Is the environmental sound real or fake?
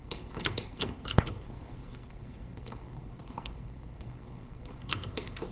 fake